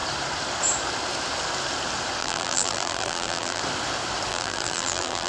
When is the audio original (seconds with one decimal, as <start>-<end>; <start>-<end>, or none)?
0.0-2.2; 3.6-4.3